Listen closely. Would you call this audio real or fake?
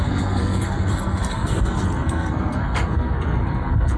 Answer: fake